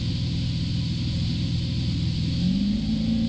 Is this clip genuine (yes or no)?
yes